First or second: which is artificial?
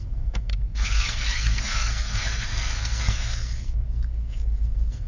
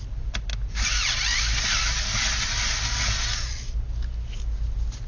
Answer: first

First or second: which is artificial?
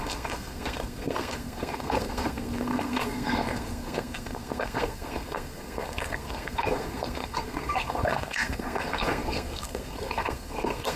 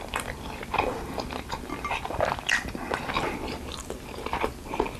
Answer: first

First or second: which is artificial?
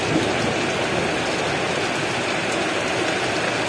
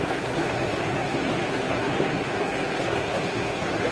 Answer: second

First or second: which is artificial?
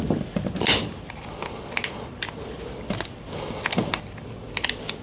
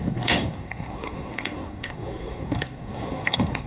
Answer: second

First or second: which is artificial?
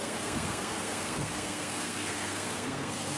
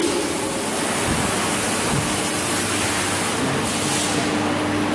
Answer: first